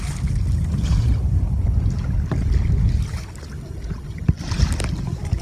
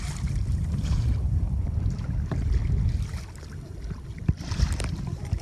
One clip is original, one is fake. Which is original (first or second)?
first